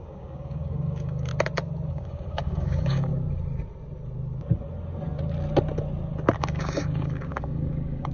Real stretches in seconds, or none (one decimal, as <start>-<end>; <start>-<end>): 1.3-1.9; 3.1-6.4